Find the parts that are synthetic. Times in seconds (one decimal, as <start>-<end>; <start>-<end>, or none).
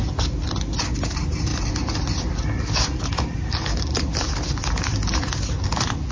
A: none